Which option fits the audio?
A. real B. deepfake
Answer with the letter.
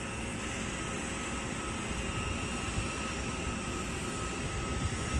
A